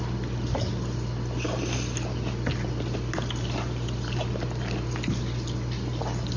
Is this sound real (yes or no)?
yes